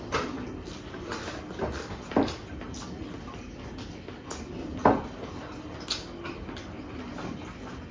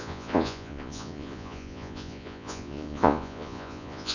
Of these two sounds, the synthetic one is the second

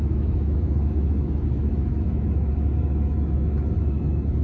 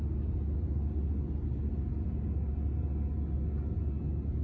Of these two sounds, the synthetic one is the first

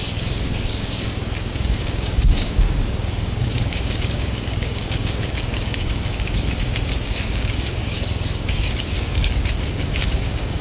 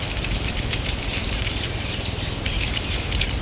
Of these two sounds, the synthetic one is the first